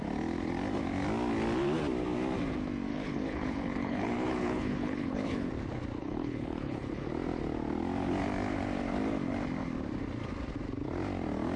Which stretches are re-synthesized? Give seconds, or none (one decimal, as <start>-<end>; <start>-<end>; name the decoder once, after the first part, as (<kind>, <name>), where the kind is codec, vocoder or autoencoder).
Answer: 2.9-5.5 (codec, HILCodec); 6.0-7.1